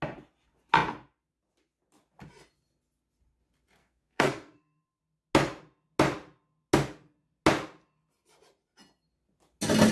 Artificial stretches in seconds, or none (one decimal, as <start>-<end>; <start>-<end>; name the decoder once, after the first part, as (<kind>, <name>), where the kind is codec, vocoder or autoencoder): 3.8-5.0 (codec, SNAC)